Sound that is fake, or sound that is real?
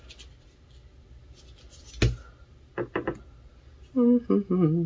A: real